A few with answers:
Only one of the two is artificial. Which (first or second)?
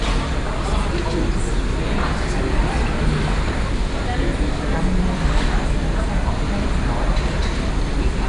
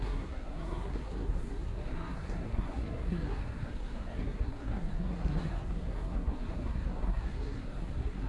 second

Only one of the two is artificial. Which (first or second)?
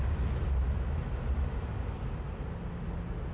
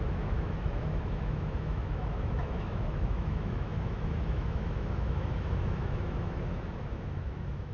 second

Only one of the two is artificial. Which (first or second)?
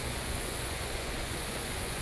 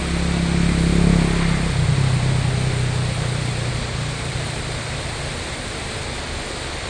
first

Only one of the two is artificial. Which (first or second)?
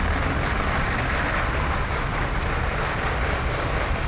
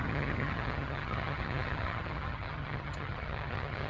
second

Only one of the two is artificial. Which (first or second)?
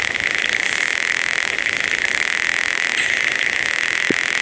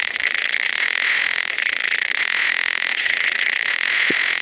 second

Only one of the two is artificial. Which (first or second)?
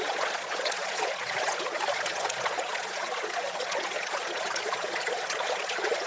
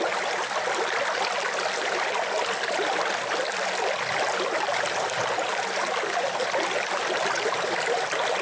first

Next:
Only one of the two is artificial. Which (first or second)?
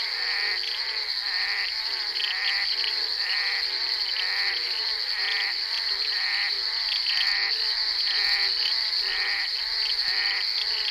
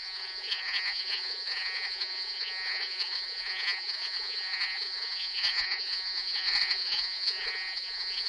second